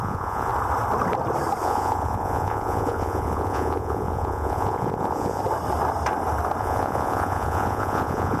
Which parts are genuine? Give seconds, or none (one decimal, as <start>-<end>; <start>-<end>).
0.5-1.6; 5.4-6.6